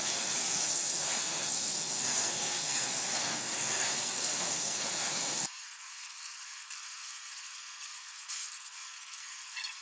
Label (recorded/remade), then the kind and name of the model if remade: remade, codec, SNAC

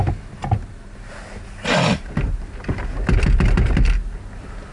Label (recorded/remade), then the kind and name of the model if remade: recorded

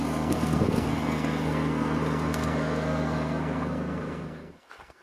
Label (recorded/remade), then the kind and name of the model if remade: remade, codec, SNAC